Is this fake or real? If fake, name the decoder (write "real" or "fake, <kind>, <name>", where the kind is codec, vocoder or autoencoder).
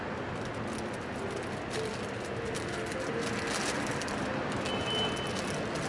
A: real